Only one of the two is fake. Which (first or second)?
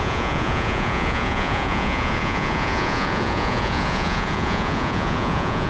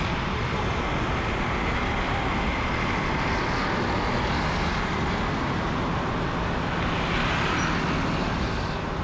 first